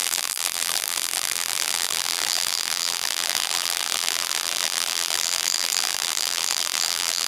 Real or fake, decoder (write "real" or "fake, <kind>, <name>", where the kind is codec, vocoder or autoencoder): fake, vocoder, BigVGAN v2